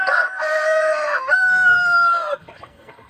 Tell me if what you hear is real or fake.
fake